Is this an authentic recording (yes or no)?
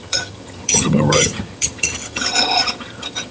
no